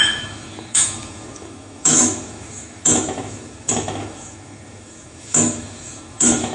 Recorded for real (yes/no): no